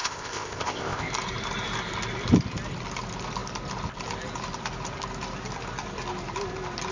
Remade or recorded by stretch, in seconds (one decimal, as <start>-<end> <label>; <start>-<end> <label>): 0.0-1.1 remade; 1.1-6.9 recorded